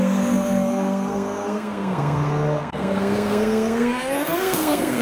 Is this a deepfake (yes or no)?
yes